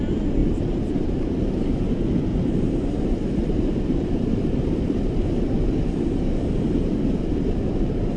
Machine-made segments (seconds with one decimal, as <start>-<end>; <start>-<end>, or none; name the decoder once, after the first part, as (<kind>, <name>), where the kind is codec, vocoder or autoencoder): 0.4-1.9 (vocoder, BigVGAN v2); 2.3-7.2